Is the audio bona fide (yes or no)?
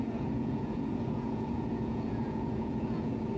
no